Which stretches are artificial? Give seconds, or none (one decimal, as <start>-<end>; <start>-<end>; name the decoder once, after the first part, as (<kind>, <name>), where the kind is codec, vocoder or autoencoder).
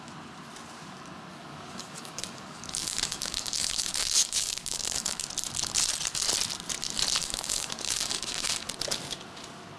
1.3-5.2 (codec, DAC); 7.2-8.7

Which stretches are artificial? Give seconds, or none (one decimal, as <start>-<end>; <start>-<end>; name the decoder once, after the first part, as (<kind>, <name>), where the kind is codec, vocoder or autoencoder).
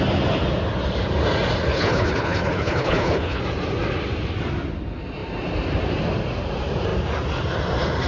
1.7-3.4 (codec, HILCodec)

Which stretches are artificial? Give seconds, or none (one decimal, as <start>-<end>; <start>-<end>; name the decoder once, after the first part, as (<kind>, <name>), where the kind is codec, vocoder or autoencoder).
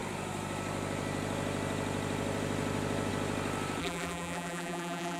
3.8-5.2 (vocoder, BigVGAN v2)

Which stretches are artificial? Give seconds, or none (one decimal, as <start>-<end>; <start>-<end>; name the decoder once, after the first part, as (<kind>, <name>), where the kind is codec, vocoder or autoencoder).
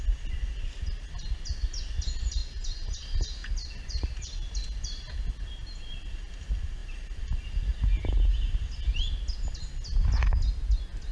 none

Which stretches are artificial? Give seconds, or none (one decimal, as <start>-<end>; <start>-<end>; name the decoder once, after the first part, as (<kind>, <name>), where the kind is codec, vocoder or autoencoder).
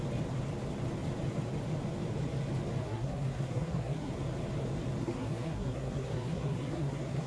2.8-4.1 (codec, SNAC); 5.0-7.3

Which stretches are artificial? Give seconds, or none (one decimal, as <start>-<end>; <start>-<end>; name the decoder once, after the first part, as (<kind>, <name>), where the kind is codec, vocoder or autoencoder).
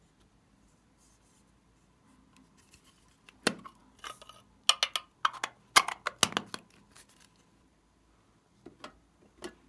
none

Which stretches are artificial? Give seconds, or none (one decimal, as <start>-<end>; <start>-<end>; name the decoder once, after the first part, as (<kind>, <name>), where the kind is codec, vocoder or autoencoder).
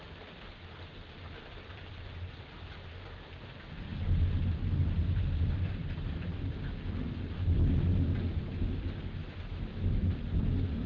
9.2-10.1 (autoencoder, DAC-VAE)